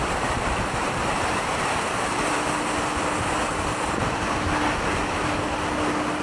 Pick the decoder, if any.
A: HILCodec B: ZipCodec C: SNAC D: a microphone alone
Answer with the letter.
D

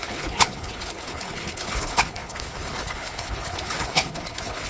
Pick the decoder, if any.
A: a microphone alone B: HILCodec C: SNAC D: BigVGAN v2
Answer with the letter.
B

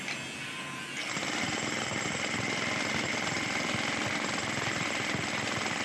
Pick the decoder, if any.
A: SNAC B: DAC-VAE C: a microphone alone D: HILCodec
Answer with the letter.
C